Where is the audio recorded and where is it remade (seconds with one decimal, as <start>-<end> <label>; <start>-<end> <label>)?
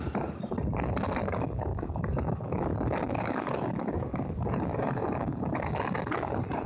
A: 0.0-1.7 recorded; 1.7-5.7 remade; 5.7-6.7 recorded